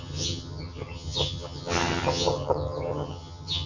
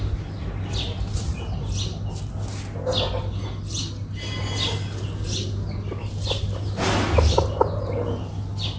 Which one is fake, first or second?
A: first